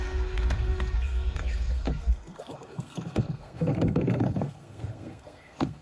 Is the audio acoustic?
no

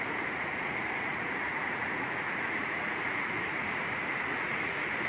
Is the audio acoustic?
no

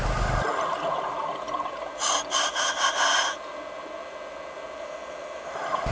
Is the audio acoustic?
yes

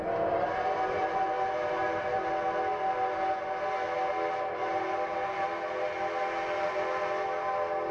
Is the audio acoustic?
yes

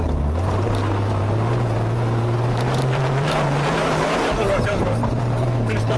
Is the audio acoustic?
no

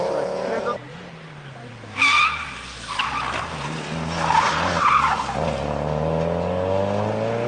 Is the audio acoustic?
yes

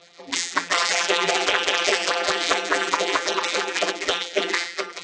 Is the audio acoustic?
no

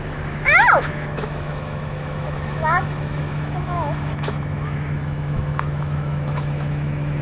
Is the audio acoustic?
no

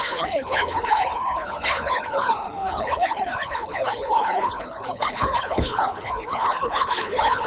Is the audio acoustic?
no